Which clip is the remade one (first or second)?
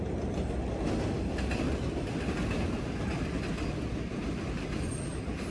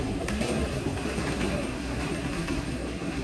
second